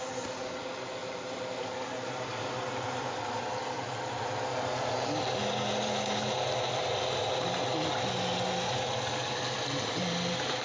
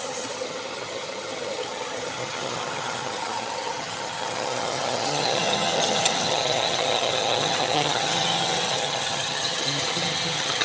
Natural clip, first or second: first